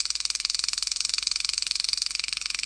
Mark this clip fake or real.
fake